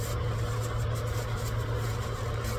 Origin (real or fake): real